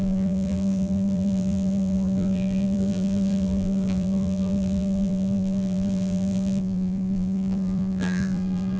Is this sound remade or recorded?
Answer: remade